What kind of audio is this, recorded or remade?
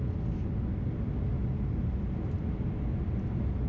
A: recorded